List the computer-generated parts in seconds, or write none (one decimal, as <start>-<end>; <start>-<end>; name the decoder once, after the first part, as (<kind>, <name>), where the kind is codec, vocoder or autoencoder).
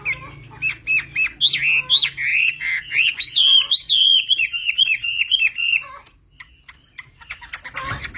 2.3-5.9 (vocoder, Vocos)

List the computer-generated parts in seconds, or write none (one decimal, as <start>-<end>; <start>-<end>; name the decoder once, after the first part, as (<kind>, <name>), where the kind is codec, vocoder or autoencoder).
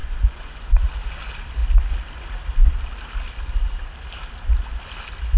0.0-0.6 (vocoder, Vocos)